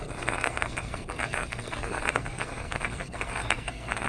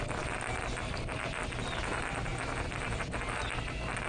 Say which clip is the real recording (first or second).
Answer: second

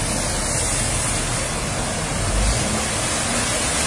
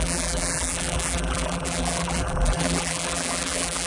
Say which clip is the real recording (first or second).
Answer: first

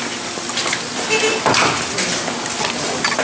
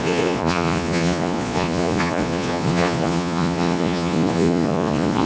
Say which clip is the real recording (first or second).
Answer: first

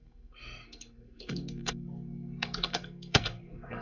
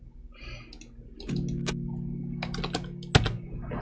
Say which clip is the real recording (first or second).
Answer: second